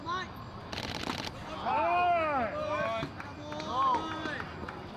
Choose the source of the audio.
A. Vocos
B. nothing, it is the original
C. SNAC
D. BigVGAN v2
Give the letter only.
B